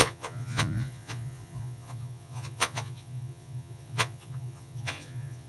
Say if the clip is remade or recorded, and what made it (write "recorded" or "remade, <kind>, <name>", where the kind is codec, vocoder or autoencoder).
remade, vocoder, Vocos